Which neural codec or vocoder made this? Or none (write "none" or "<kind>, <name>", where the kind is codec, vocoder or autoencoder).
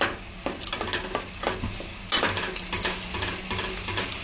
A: none